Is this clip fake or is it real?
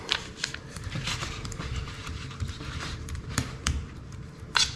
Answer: fake